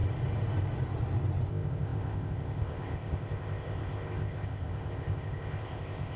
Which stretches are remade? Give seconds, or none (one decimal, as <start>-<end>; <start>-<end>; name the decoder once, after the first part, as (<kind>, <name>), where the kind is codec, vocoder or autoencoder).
1.5-6.2 (codec, ZipCodec)